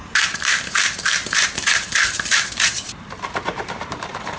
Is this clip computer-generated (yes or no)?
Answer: yes